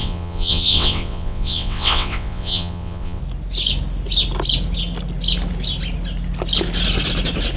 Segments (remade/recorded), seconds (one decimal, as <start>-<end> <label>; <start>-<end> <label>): 0.0-3.2 remade; 3.2-7.6 recorded